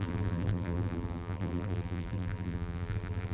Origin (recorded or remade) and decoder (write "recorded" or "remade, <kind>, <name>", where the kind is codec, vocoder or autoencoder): remade, vocoder, BigVGAN v2